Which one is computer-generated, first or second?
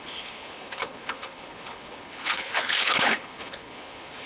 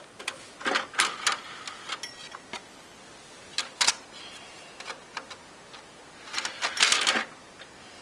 first